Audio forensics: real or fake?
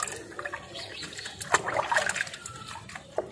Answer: real